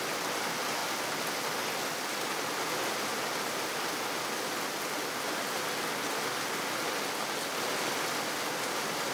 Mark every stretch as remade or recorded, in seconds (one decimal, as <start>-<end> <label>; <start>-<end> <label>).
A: 0.0-9.1 recorded